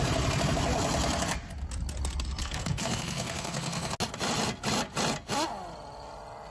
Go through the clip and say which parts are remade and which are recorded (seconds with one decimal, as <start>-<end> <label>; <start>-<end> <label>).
0.0-2.4 recorded; 2.4-3.9 remade; 3.9-6.5 recorded